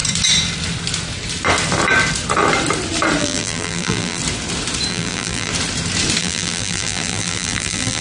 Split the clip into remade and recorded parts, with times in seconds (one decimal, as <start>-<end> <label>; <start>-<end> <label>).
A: 0.0-3.2 recorded; 3.2-4.2 remade; 4.2-4.9 recorded; 4.9-5.5 remade; 5.5-6.2 recorded; 6.2-8.0 remade